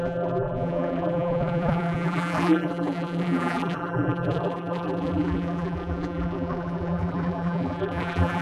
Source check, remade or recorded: remade